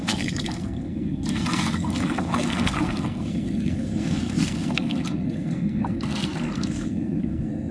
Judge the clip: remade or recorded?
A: remade